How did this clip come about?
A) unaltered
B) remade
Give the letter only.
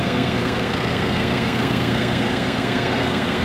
B